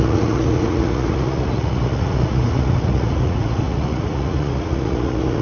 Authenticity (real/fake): fake